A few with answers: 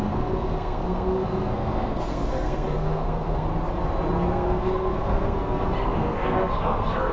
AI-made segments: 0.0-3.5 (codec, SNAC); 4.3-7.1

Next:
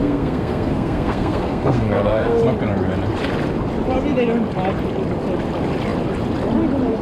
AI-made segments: 0.0-2.4 (codec, SNAC)

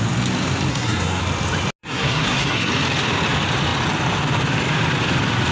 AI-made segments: 0.7-1.2 (codec, SNAC); 1.8-2.7

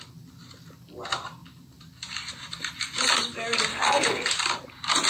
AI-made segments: 3.7-4.3 (codec, SNAC)

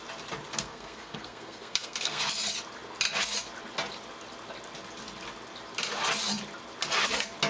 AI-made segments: 0.5-2.2 (codec, SNAC)